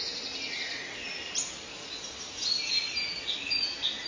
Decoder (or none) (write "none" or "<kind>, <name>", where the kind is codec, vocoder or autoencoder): none